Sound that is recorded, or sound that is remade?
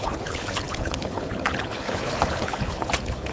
remade